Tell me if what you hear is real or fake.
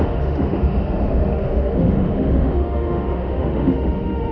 fake